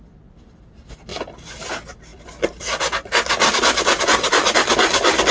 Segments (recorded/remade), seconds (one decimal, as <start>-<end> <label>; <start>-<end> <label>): 0.0-5.3 recorded